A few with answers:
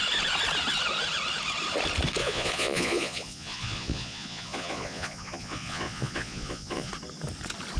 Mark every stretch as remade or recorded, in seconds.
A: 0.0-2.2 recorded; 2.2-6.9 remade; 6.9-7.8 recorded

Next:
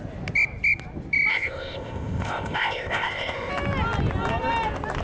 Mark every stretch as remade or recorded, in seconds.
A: 0.0-1.3 recorded; 1.3-3.5 remade; 3.5-5.0 recorded

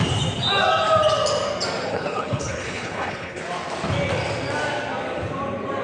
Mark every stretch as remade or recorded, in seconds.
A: 0.0-1.9 recorded; 1.9-3.4 remade; 3.4-5.8 recorded